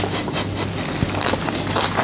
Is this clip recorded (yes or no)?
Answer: yes